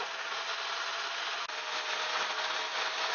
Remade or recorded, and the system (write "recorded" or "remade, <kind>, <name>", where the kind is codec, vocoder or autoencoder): recorded